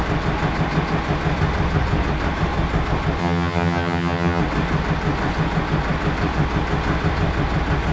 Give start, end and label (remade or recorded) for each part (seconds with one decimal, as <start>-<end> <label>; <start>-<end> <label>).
0.0-3.2 recorded; 3.2-4.4 remade; 4.4-7.9 recorded

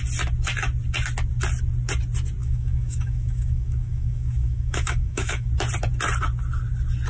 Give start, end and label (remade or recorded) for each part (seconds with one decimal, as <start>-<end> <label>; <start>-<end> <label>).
0.0-2.4 recorded; 2.4-5.5 remade; 5.5-7.1 recorded

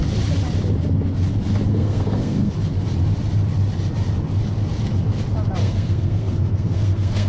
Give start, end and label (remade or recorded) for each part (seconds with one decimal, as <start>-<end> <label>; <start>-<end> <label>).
0.0-1.7 recorded; 1.7-2.5 remade; 2.5-5.6 recorded; 5.6-7.3 remade